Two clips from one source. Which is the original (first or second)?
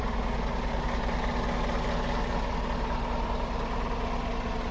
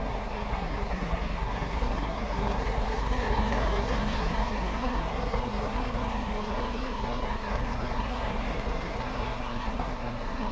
first